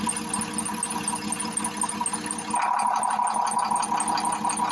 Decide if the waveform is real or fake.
real